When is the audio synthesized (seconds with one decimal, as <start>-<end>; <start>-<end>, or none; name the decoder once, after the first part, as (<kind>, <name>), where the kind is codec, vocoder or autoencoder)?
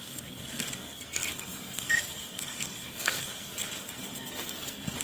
0.0-5.0 (codec, SNAC)